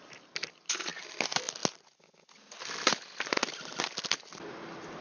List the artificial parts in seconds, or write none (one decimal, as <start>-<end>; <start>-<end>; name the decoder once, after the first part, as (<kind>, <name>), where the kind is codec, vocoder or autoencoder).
none